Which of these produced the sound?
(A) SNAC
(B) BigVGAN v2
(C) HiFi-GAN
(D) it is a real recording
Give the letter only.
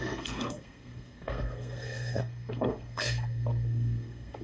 A